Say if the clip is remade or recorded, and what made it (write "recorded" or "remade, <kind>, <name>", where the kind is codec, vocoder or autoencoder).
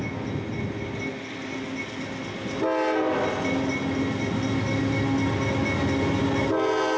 recorded